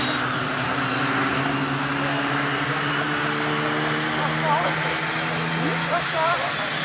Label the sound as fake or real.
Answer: real